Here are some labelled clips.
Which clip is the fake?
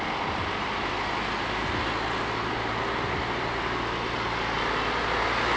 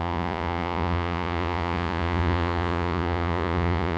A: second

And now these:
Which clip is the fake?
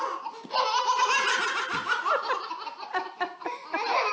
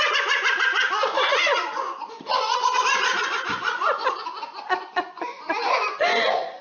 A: second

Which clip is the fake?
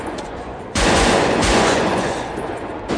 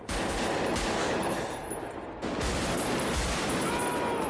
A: first